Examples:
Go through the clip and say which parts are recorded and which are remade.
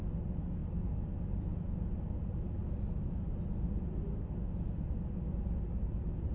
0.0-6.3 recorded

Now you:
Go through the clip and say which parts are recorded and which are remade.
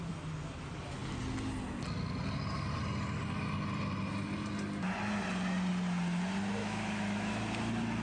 0.0-6.6 recorded; 6.6-7.4 remade; 7.4-8.0 recorded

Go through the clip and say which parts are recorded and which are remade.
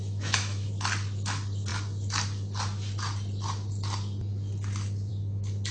0.0-0.7 remade; 0.7-5.7 recorded